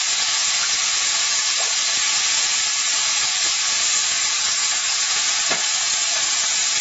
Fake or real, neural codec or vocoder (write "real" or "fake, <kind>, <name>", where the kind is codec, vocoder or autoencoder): fake, vocoder, Vocos